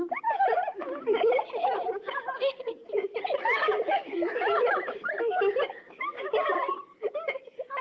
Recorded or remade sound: recorded